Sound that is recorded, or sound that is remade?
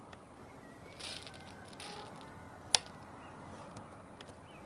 recorded